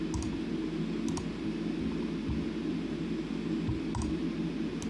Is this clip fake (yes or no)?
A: no